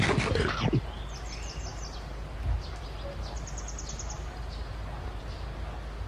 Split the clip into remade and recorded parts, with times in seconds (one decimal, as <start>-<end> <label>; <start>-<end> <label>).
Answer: 0.0-6.1 recorded

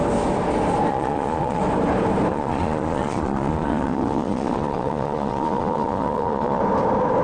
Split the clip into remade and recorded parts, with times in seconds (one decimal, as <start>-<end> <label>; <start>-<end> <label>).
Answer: 0.0-0.9 recorded; 0.9-1.6 remade; 1.6-2.3 recorded; 2.3-6.6 remade; 6.6-7.2 recorded